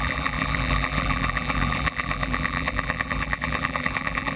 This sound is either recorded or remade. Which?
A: remade